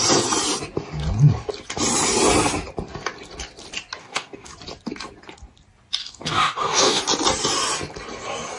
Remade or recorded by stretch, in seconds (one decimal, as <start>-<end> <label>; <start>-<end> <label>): 0.0-4.0 recorded; 4.0-4.5 remade; 4.5-6.0 recorded; 6.0-7.0 remade; 7.0-8.6 recorded